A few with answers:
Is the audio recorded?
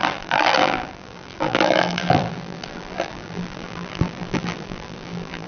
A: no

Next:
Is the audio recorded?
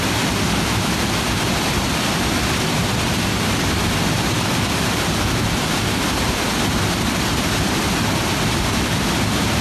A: yes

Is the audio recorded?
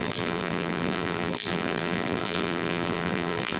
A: no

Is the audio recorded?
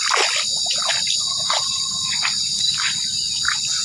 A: yes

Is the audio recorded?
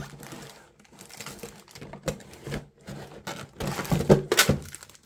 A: yes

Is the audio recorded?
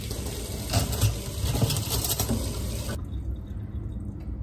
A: yes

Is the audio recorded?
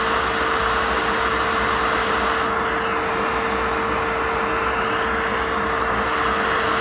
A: yes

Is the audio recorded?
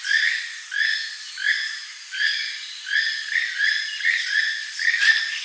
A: yes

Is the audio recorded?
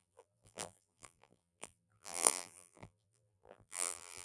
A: no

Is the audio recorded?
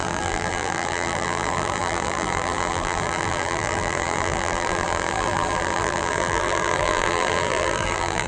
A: no